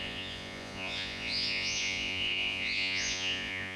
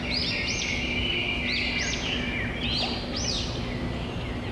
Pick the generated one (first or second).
first